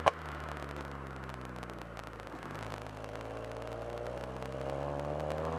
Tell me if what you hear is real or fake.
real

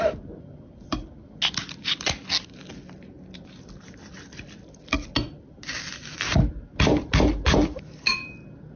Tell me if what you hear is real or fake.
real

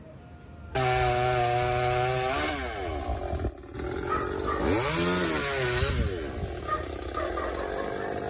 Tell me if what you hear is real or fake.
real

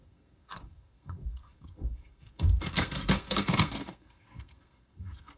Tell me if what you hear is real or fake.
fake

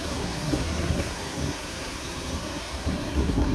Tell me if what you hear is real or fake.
fake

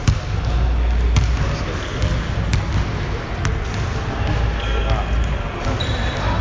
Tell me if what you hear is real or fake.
real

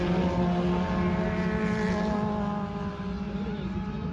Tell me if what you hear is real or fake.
real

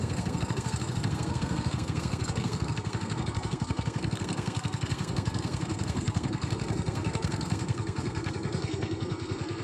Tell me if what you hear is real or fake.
fake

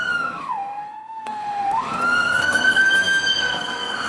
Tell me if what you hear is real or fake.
fake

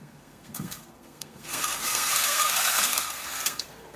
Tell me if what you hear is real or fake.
fake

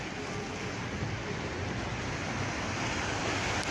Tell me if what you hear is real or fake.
real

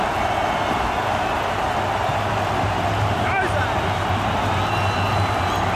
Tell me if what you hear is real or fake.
real